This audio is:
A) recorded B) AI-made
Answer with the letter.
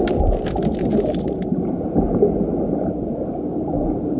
A